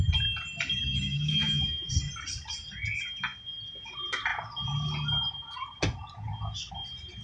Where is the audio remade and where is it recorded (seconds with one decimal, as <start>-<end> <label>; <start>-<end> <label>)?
0.0-0.8 recorded; 0.8-1.9 remade; 1.9-7.2 recorded